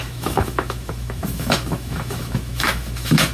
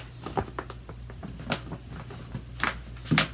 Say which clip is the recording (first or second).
second